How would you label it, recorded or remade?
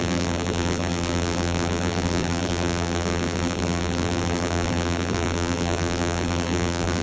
remade